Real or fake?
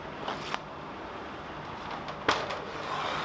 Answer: real